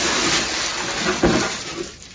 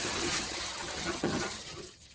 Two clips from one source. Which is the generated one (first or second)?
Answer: second